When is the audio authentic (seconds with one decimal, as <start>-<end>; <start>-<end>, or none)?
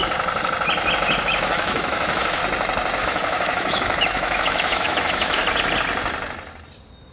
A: 0.0-1.2; 2.4-3.0; 5.4-7.1